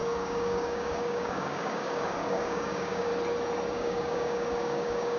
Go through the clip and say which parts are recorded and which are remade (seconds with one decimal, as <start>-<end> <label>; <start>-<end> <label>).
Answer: 0.0-3.1 remade; 3.1-3.7 recorded; 3.7-5.2 remade